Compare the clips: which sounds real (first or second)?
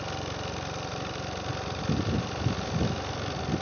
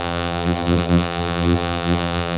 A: first